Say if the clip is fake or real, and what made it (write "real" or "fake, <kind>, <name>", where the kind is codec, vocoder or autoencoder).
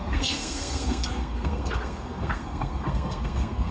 fake, codec, SNAC